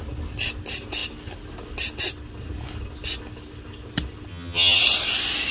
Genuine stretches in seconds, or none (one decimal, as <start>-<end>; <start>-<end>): 0.0-4.3; 4.8-5.5